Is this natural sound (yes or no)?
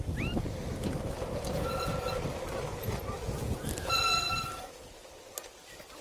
yes